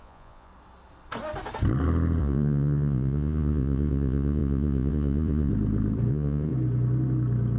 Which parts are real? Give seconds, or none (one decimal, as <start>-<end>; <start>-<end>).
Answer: 0.5-2.2; 5.5-6.1; 6.5-7.6